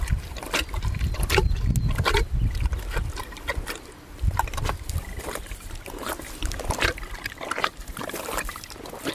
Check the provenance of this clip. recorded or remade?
recorded